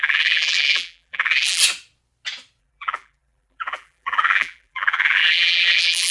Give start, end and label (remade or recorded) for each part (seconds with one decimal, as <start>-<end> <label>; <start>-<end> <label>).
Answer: 0.0-1.6 remade; 1.6-2.6 recorded; 2.6-6.1 remade